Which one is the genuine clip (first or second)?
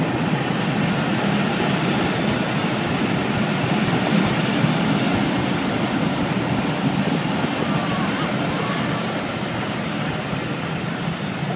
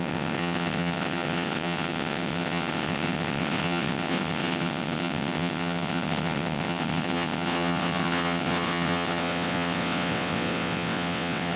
first